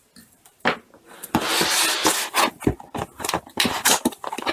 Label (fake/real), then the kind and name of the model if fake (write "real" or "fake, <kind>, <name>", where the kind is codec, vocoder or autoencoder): real